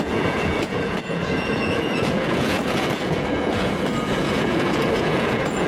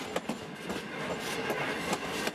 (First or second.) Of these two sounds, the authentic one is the second